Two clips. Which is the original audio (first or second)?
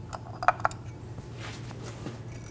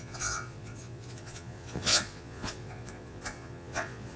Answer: first